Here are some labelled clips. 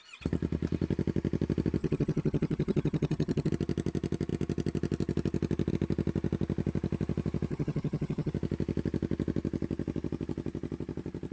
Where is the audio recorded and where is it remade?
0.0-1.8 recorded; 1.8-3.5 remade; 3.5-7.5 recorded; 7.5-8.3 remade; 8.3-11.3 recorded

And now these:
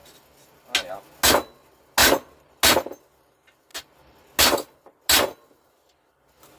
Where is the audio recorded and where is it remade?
0.0-2.0 recorded; 2.0-2.5 remade; 2.5-6.6 recorded

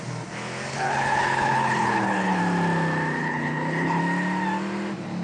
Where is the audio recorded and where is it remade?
0.0-0.7 recorded; 0.7-2.4 remade; 2.4-3.2 recorded; 3.2-4.0 remade; 4.0-5.2 recorded

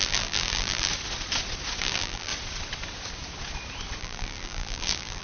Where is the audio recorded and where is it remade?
0.0-0.9 remade; 0.9-1.8 recorded; 1.8-2.3 remade; 2.3-4.0 recorded; 4.0-5.2 remade

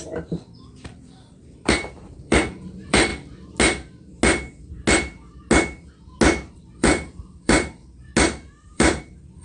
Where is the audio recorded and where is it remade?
0.0-3.1 remade; 3.1-6.5 recorded; 6.5-8.1 remade; 8.1-8.6 recorded; 8.6-9.4 remade